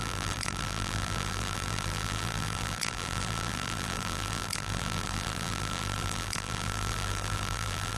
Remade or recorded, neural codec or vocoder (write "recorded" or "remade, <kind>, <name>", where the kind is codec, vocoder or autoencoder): remade, vocoder, BigVGAN v2